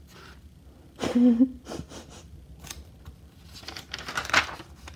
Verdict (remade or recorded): recorded